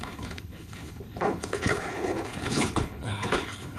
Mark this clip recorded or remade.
remade